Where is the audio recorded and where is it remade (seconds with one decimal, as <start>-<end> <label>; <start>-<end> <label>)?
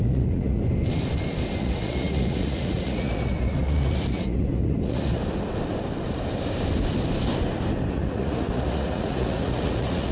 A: 0.0-0.6 remade; 0.6-1.6 recorded; 1.6-5.2 remade; 5.2-7.9 recorded; 7.9-10.1 remade